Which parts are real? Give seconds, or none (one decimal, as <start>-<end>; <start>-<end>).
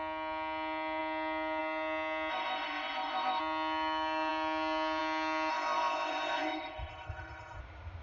0.0-2.3; 3.4-5.5; 7.6-8.0